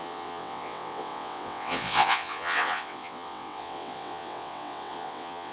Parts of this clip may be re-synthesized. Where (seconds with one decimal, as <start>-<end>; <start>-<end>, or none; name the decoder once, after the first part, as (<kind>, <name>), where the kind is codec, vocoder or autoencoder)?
0.0-5.5 (vocoder, WaveNeXt)